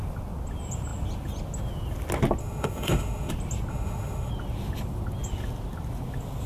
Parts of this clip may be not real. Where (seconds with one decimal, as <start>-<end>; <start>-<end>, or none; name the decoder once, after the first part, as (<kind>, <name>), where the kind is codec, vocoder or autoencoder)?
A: 2.4-3.3 (autoencoder, DAC-VAE); 3.7-4.3